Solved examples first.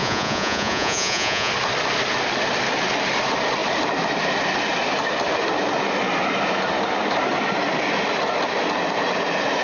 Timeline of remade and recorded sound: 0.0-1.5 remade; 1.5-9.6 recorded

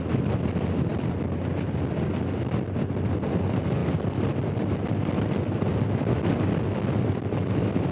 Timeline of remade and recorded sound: 0.0-7.9 recorded

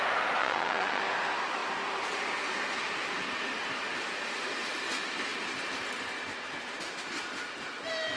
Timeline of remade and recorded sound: 0.0-0.4 recorded; 0.4-1.0 remade; 1.0-8.2 recorded

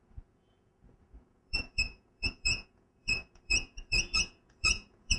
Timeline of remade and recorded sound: 0.0-5.2 remade

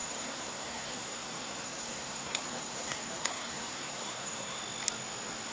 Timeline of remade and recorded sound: 0.0-4.6 remade; 4.6-5.5 recorded